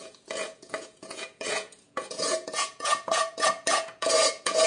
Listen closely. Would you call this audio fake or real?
fake